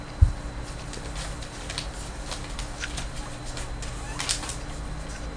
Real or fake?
real